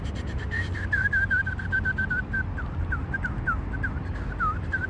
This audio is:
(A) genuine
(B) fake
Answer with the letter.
A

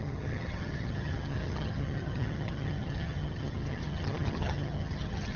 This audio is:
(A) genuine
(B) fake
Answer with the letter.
B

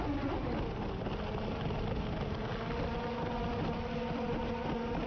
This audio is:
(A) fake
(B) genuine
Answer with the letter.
B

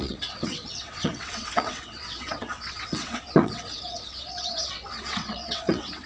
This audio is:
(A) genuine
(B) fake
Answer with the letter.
B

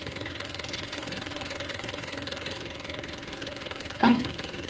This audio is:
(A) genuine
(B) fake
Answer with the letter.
B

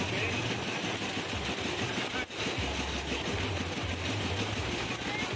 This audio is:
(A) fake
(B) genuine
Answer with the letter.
B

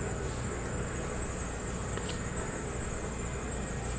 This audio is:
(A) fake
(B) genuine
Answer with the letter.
B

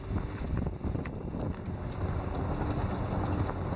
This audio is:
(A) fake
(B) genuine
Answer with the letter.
B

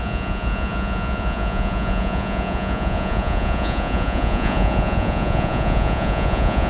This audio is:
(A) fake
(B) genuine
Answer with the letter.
A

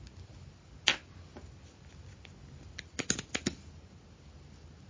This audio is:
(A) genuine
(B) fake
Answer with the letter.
A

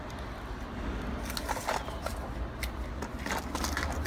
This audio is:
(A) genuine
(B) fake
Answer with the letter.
A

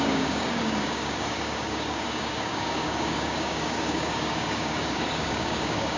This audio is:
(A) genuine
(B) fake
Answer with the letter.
B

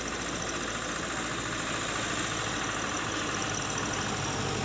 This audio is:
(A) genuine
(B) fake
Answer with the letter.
A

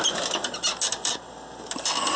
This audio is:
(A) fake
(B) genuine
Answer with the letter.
B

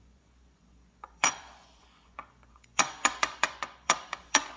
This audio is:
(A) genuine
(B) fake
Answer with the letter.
B